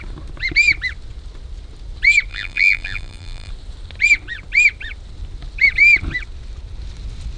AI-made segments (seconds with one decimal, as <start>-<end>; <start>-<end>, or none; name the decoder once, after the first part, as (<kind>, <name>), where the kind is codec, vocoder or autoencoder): 2.3-3.5 (vocoder, BigVGAN v2)

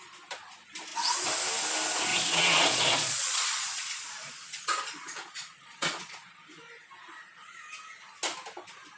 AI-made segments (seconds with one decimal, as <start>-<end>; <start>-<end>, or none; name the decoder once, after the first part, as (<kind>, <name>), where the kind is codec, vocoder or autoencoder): 2.1-6.3 (vocoder, Vocos)

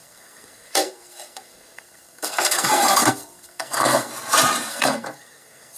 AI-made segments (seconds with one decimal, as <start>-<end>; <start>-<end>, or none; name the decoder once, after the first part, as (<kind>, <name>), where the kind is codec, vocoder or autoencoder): 0.0-4.1 (codec, SNAC); 4.7-5.8

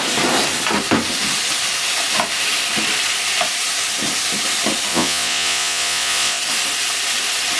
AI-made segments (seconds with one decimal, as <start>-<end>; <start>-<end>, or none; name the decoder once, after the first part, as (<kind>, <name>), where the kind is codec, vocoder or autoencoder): 4.9-6.4 (vocoder, Vocos)